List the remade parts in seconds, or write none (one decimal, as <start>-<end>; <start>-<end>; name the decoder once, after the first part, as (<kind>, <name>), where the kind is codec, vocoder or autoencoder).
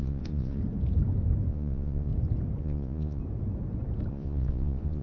0.0-0.6 (vocoder, Vocos); 1.5-2.1; 2.6-3.2; 4.1-5.0